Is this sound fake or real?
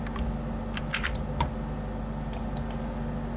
real